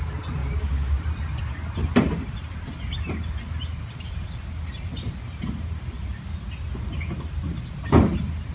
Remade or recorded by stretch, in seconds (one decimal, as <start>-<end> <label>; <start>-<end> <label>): 0.0-0.4 recorded; 0.4-1.0 remade; 1.0-8.5 recorded